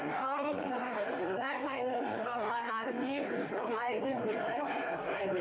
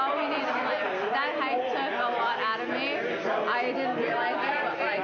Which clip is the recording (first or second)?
second